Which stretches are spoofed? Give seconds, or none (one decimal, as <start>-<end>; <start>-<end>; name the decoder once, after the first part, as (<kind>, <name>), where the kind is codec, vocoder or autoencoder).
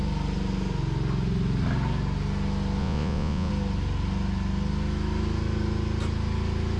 2.8-3.5 (vocoder, Vocos)